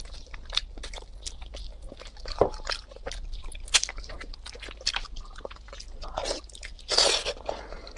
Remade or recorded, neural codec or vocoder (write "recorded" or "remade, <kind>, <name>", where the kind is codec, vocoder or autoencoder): recorded